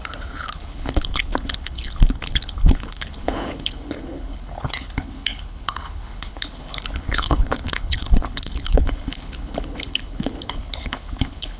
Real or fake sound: fake